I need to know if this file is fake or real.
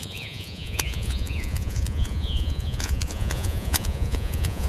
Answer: fake